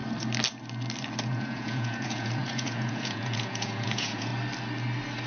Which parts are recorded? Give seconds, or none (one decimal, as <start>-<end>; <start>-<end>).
0.0-1.3; 4.3-5.3